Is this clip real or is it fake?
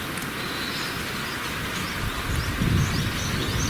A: real